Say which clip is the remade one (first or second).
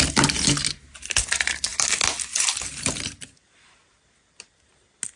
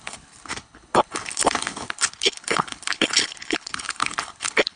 second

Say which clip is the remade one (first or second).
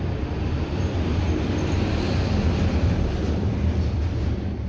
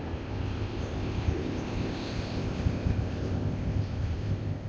second